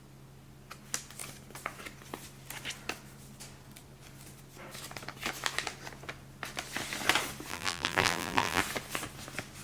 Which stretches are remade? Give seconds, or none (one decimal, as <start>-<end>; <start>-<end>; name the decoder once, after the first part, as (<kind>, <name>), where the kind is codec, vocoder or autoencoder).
7.5-8.6 (vocoder, BigVGAN v2)